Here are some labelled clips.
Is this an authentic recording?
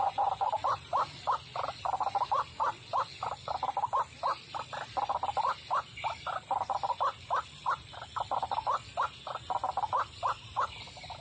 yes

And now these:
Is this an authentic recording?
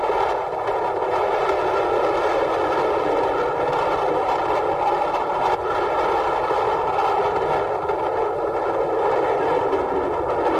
yes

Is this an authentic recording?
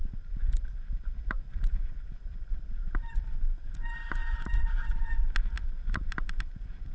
yes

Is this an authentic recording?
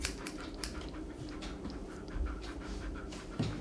no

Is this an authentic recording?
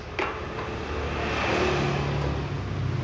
yes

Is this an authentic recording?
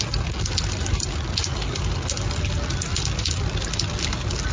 yes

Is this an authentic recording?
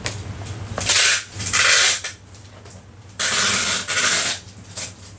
yes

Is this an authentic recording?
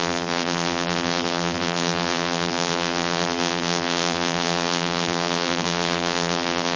no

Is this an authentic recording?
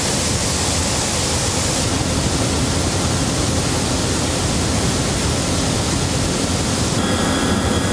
no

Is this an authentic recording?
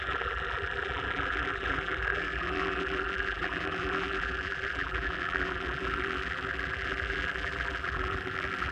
no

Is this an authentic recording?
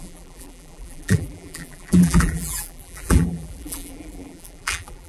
no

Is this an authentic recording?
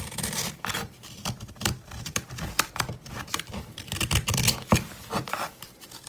no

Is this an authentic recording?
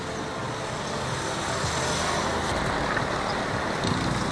yes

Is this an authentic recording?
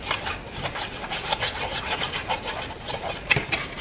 no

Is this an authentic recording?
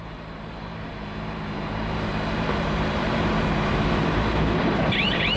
no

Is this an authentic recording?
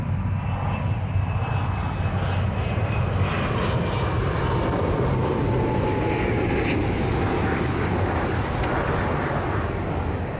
yes